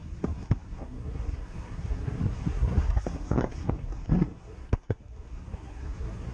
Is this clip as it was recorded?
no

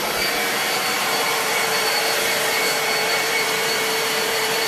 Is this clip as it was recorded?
no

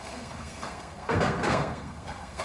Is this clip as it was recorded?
no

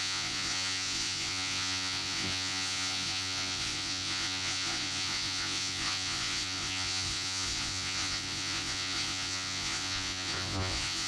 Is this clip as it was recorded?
no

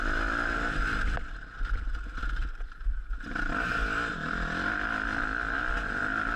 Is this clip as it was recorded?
yes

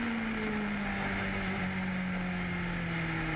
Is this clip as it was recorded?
yes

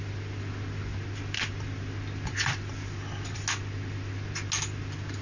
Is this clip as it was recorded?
yes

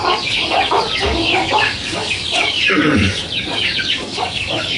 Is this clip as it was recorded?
no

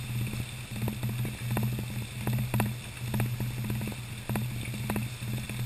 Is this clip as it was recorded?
yes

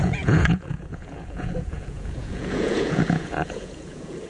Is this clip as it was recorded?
no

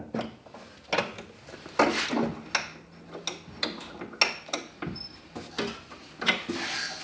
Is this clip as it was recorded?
yes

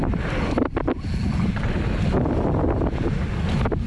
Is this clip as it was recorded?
yes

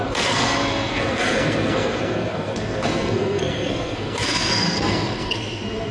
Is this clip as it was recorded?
no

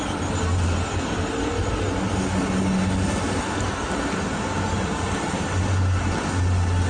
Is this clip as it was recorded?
yes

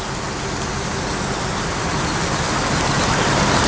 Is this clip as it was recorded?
yes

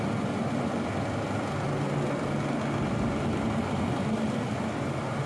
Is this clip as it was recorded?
yes